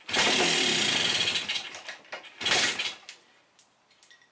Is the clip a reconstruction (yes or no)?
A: no